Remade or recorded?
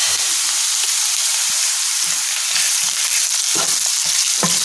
recorded